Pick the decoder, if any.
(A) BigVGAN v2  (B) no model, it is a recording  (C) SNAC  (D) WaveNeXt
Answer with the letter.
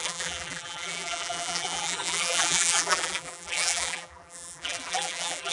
A